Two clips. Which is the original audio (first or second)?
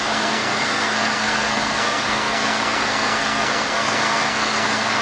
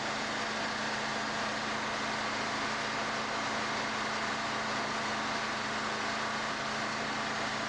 second